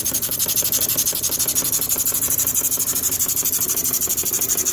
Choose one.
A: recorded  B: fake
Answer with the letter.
A